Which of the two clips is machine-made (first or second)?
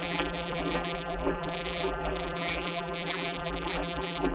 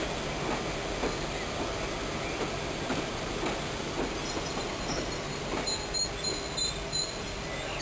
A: first